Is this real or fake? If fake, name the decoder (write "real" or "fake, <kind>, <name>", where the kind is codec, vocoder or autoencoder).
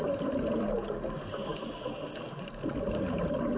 real